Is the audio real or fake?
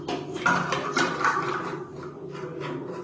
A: real